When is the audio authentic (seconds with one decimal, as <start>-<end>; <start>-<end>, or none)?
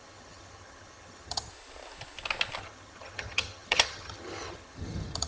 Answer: 1.5-2.6